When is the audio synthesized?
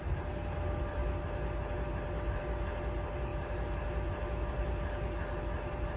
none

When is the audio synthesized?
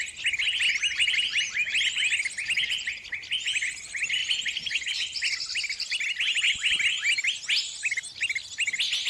none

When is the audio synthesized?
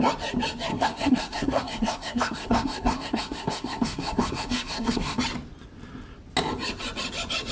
0.7-5.2 (codec, SNAC)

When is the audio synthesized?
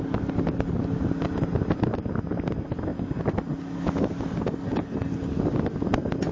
none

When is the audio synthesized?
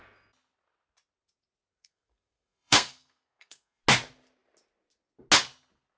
1.8-3.8 (codec, SNAC)